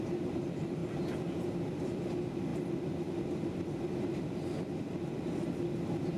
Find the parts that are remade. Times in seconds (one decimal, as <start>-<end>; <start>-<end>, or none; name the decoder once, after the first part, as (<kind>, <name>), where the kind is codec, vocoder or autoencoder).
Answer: 0.0-0.8 (vocoder, BigVGAN v2); 1.7-6.2

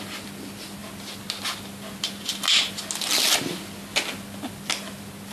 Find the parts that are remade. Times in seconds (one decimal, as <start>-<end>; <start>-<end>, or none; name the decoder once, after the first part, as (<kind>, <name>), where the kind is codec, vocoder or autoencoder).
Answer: none